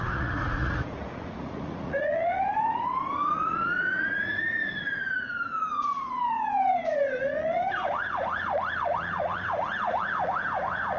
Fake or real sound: fake